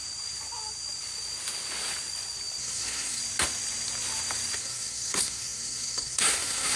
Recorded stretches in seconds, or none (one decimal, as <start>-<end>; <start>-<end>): 0.0-2.6; 3.2-4.6